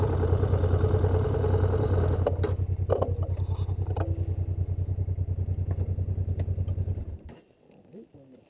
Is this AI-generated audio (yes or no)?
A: no